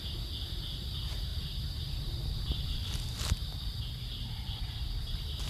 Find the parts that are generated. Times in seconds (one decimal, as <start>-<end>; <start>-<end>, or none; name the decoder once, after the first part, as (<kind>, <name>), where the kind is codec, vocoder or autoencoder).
none